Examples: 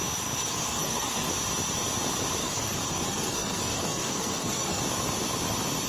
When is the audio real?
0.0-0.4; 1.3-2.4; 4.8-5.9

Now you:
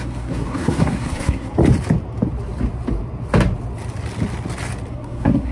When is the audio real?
1.6-4.9

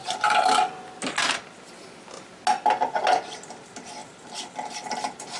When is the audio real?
0.0-5.4

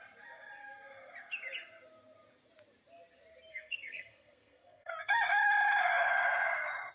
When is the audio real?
0.0-3.5; 4.9-6.9

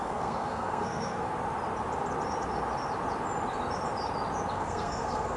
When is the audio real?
1.3-4.5

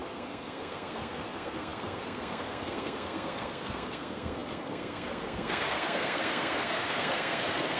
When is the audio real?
none

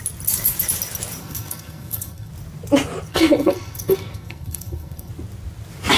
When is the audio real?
0.0-1.2; 2.3-3.1; 5.1-6.0

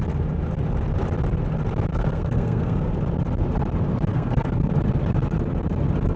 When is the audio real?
0.0-1.9; 2.9-4.1; 4.7-6.2